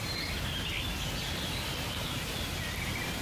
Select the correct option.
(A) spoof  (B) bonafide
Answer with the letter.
B